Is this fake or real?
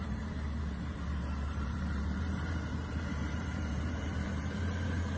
fake